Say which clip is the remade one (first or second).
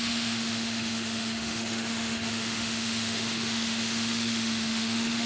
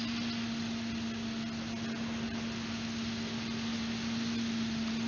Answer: first